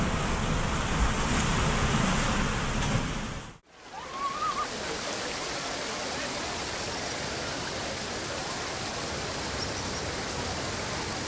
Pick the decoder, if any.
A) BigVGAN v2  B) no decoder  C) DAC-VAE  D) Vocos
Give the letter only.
B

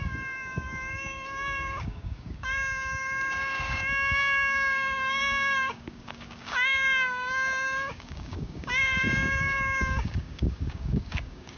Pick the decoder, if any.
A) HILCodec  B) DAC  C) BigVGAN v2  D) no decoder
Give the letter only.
B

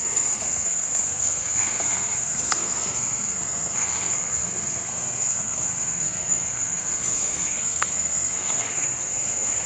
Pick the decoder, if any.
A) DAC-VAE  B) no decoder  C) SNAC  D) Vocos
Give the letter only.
C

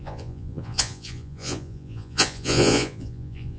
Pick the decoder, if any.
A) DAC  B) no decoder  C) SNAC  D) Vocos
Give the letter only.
D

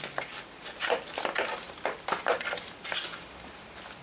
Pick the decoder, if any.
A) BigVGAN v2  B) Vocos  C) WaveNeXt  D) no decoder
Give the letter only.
A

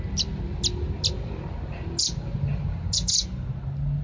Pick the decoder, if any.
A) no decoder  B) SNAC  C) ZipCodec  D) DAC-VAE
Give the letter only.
A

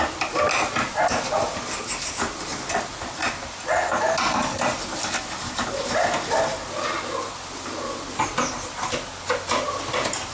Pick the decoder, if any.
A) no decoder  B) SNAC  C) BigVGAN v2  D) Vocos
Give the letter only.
A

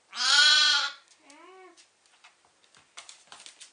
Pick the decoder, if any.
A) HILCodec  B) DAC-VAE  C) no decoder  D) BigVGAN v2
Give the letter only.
C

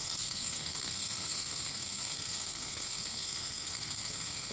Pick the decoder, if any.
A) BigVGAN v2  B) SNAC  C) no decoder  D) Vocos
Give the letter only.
B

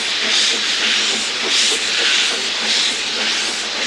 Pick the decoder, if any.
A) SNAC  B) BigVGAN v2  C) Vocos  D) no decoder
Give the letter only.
D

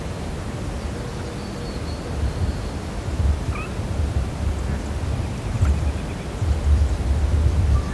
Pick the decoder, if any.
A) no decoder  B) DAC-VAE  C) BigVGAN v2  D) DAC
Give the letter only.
A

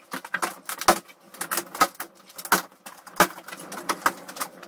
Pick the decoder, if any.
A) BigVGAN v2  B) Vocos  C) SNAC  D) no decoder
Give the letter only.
D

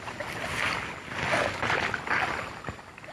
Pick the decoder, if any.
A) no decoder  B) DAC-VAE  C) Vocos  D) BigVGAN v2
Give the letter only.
A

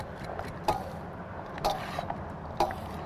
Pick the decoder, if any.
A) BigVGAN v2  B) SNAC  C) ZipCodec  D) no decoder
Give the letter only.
A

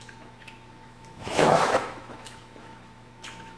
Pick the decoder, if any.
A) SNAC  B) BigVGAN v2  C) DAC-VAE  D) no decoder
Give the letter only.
C